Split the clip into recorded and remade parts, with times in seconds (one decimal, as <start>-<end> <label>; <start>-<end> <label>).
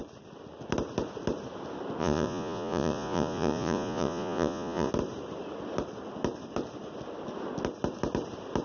0.0-2.0 recorded; 2.0-4.9 remade; 4.9-8.6 recorded